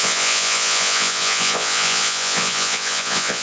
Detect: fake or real fake